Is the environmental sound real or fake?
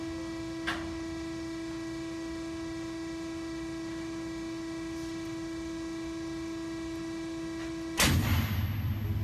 real